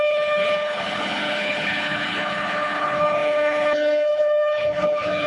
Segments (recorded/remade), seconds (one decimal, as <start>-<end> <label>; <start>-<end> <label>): 0.0-5.3 remade